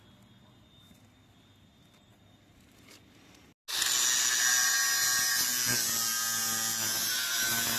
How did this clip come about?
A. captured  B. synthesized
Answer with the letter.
A